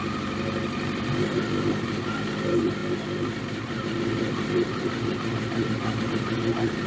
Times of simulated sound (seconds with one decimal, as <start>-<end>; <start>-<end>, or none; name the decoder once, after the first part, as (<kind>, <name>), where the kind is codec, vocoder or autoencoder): 0.0-6.9 (vocoder, BigVGAN v2)